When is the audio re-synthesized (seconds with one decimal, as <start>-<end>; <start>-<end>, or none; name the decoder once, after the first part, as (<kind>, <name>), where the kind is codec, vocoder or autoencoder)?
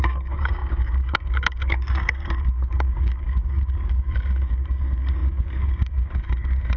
0.0-6.8 (codec, DAC)